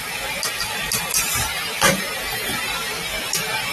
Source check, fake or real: real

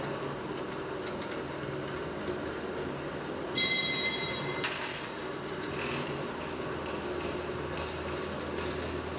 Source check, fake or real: real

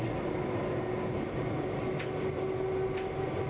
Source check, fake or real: real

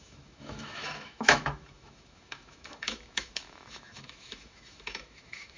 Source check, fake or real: fake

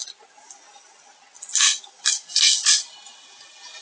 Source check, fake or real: real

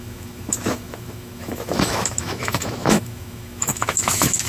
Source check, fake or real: fake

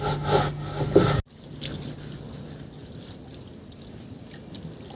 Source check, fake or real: real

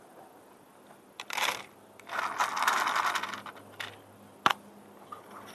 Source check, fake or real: real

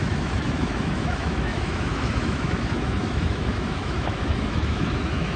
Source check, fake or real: fake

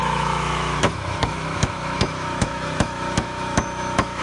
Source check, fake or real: fake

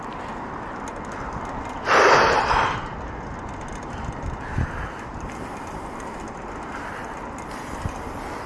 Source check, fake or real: real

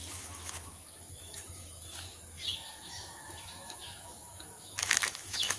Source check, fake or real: fake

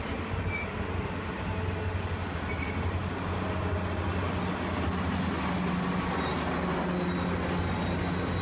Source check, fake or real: real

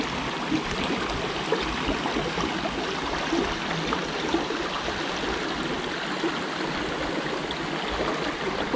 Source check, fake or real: real